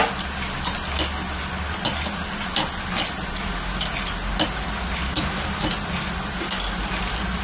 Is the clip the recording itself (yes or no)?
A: yes